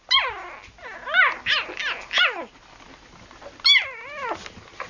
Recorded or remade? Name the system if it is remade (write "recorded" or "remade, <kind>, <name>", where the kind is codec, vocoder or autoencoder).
recorded